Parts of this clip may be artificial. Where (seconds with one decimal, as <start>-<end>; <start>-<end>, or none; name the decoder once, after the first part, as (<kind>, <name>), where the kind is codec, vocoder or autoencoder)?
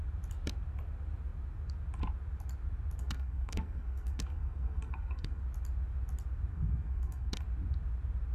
3.0-5.4 (codec, SNAC); 6.5-7.4